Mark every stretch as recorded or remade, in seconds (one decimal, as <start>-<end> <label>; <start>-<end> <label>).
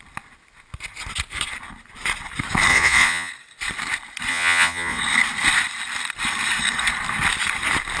0.0-2.7 recorded; 2.7-3.3 remade; 3.3-4.3 recorded; 4.3-5.0 remade; 5.0-8.0 recorded